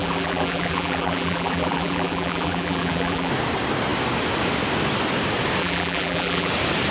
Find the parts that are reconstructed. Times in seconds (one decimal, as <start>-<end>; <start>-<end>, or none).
0.0-3.3; 5.6-6.5